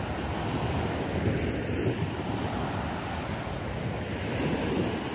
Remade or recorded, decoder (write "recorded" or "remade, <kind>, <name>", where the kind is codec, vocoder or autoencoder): recorded